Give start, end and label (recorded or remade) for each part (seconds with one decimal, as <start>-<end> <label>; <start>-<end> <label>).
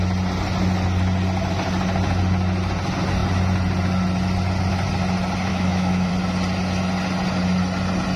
0.0-5.5 recorded; 5.5-6.1 remade; 6.1-8.2 recorded